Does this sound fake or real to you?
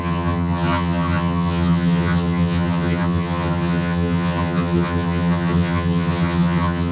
fake